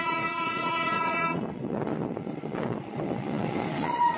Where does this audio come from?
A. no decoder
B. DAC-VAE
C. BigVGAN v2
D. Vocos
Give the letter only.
D